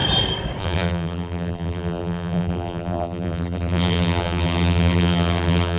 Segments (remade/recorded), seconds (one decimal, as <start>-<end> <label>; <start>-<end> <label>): 0.0-0.6 recorded; 0.6-5.8 remade